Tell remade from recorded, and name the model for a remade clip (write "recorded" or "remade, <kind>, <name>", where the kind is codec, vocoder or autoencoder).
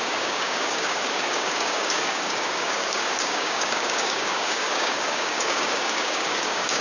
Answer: remade, codec, DAC